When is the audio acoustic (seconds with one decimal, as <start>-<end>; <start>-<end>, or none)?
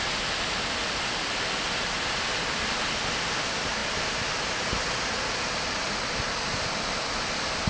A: 0.0-7.7